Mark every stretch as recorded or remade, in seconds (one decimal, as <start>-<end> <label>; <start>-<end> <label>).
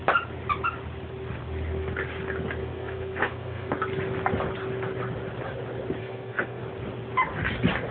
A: 0.0-2.6 recorded; 2.6-3.7 remade; 3.7-6.0 recorded; 6.0-6.6 remade; 6.6-7.9 recorded